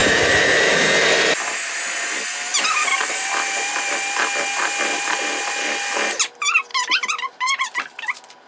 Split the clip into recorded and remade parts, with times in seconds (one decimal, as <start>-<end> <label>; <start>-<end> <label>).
0.0-0.8 remade; 0.8-2.5 recorded; 2.5-3.7 remade; 3.7-6.7 recorded; 6.7-7.6 remade; 7.6-8.5 recorded